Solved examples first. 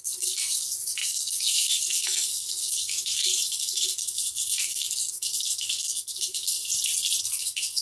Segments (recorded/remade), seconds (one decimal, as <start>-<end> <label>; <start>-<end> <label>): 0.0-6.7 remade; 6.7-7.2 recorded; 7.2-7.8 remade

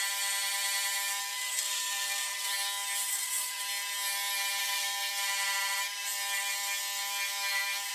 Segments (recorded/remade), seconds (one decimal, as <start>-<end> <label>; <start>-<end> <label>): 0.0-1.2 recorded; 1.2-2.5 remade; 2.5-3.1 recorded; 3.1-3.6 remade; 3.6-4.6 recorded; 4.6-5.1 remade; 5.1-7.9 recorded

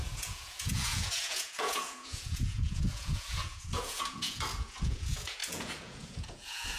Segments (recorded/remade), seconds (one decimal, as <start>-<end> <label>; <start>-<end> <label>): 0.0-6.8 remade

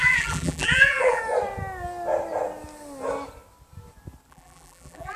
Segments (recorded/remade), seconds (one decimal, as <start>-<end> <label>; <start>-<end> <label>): 0.0-1.2 remade; 1.2-4.3 recorded; 4.3-5.2 remade

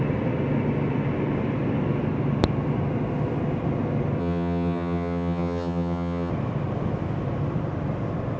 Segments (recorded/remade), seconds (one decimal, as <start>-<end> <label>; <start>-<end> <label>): 0.0-4.2 recorded; 4.2-6.3 remade; 6.3-8.4 recorded

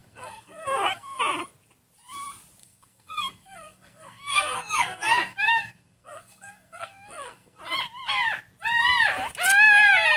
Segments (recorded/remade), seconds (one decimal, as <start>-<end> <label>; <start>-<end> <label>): 0.0-1.2 remade; 1.2-2.6 recorded; 2.6-7.6 remade; 7.6-10.2 recorded